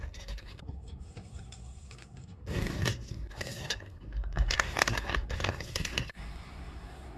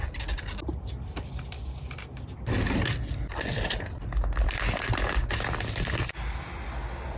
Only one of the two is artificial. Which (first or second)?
first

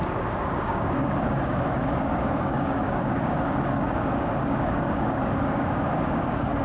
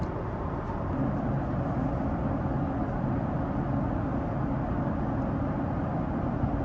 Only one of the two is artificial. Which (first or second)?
first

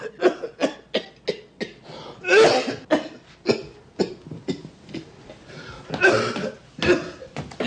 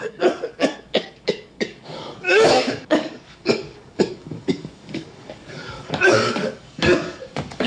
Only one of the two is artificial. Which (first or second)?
second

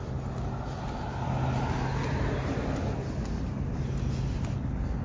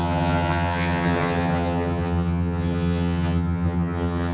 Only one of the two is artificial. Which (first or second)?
second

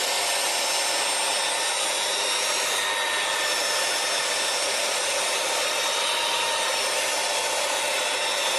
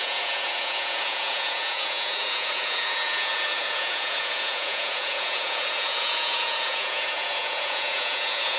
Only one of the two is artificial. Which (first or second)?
second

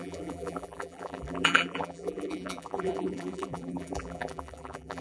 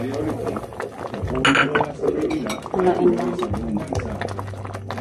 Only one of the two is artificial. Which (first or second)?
first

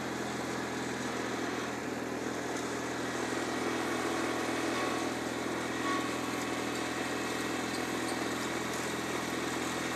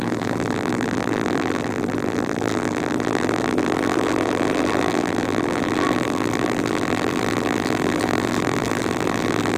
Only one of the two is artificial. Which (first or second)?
second